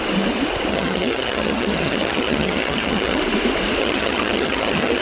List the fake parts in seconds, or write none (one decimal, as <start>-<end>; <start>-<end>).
0.7-3.2; 3.8-5.0